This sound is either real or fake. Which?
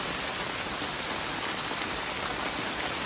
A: real